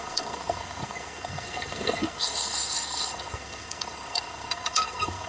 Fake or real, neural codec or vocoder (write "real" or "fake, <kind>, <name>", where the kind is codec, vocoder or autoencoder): fake, codec, SNAC